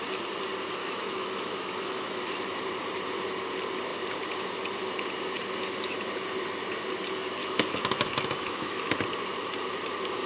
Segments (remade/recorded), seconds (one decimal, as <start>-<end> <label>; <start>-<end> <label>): 0.0-0.8 recorded; 0.8-2.6 remade; 2.6-7.4 recorded; 7.4-8.9 remade; 8.9-10.3 recorded